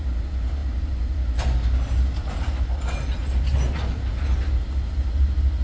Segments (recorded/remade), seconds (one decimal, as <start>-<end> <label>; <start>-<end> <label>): 0.0-5.6 recorded